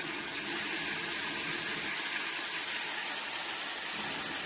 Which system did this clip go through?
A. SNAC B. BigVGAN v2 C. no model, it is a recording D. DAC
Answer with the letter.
C